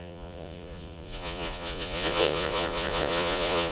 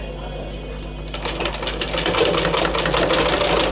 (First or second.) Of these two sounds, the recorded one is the second